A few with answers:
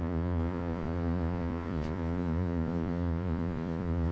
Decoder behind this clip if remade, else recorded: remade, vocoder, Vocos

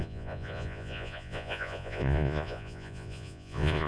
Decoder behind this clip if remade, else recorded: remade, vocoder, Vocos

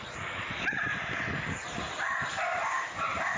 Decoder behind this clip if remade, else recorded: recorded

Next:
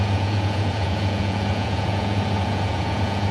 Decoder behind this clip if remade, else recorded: remade, vocoder, Vocos